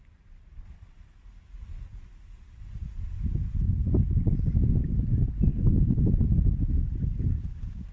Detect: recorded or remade recorded